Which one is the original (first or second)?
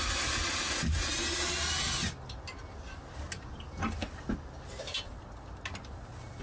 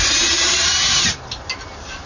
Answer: first